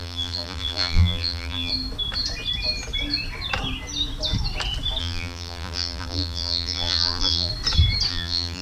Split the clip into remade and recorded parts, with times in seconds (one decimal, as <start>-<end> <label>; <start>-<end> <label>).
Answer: 0.0-1.7 remade; 1.7-5.0 recorded; 5.0-7.5 remade; 7.5-8.1 recorded; 8.1-8.6 remade